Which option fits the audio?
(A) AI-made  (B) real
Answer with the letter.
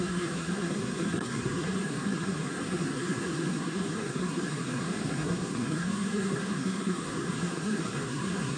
A